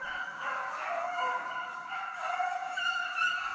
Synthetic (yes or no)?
yes